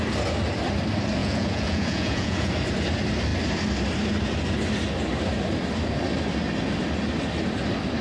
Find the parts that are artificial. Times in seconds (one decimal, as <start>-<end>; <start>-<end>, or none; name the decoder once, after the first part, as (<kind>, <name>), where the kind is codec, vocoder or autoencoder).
1.2-2.5 (vocoder, Vocos)